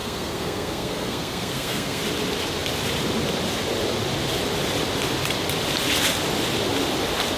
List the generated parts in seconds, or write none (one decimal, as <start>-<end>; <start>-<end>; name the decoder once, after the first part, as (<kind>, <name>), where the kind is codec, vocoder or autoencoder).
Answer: 0.0-2.0 (codec, SNAC)